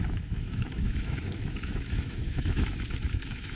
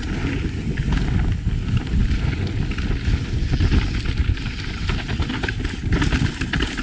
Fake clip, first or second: first